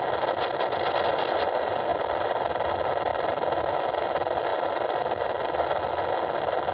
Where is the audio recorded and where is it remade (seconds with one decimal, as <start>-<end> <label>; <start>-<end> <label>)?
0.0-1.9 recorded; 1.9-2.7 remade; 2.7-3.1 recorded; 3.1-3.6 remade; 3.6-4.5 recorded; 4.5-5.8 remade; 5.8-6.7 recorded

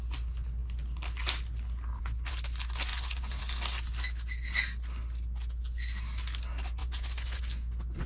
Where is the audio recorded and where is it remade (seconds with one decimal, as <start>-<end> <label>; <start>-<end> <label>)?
0.0-2.9 recorded; 2.9-3.4 remade; 3.4-6.8 recorded; 6.8-7.4 remade; 7.4-8.1 recorded

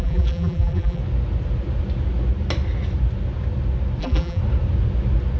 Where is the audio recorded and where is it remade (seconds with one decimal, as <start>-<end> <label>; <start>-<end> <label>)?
0.0-1.0 remade; 1.0-4.0 recorded; 4.0-4.4 remade; 4.4-5.4 recorded

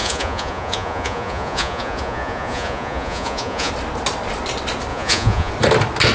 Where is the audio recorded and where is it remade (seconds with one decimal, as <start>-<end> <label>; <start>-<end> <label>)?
0.0-3.7 remade; 3.7-4.9 recorded; 4.9-5.5 remade; 5.5-6.1 recorded

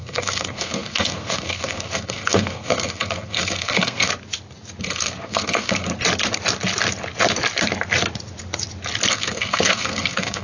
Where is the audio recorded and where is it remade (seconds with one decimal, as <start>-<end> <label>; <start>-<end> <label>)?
0.0-4.1 remade; 4.1-4.8 recorded; 4.8-5.9 remade; 5.9-9.1 recorded; 9.1-10.4 remade